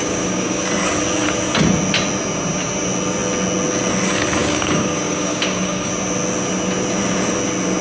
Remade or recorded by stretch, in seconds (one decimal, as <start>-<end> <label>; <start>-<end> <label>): 0.0-0.6 remade; 0.6-4.4 recorded; 4.4-5.9 remade; 5.9-7.8 recorded